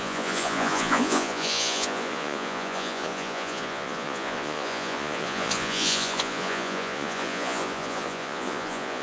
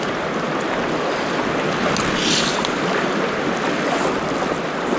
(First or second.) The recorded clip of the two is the second